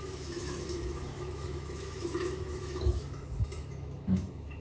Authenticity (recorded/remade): remade